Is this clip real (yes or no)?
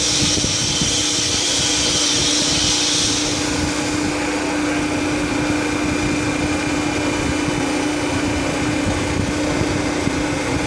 yes